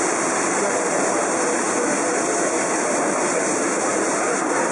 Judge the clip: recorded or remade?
remade